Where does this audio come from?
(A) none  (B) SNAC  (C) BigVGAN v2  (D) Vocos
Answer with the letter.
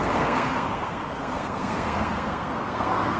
B